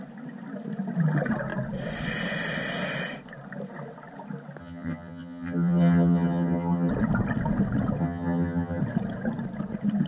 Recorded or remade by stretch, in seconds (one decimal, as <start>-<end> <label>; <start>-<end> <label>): 0.0-4.6 recorded; 4.6-6.9 remade; 6.9-8.0 recorded; 8.0-8.8 remade; 8.8-10.1 recorded